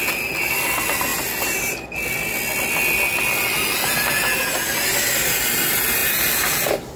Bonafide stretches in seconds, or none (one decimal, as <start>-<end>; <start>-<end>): 0.0-4.5; 5.4-6.0